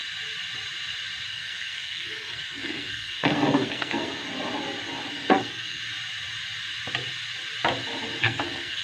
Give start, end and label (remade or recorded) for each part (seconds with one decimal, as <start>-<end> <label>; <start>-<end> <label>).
0.0-1.3 recorded; 1.3-4.2 remade; 4.2-5.1 recorded; 5.1-5.8 remade; 5.8-8.2 recorded; 8.2-8.8 remade

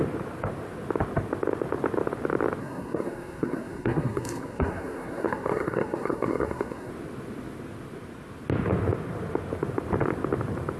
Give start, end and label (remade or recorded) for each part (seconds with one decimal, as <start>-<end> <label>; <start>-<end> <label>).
0.0-2.6 recorded; 2.6-6.9 remade; 6.9-10.8 recorded

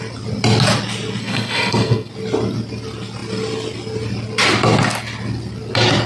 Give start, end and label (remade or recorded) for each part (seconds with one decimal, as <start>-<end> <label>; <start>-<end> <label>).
0.0-1.2 recorded; 1.2-2.1 remade; 2.1-6.1 recorded